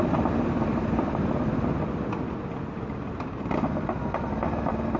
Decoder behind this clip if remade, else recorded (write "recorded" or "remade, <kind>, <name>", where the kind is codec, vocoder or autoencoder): recorded